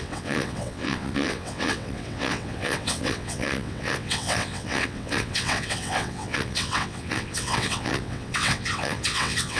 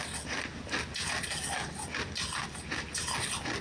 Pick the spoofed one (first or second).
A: first